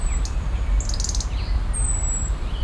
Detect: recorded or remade recorded